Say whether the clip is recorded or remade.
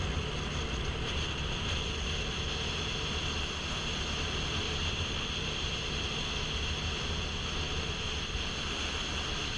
recorded